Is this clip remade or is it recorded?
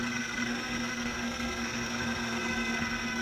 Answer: remade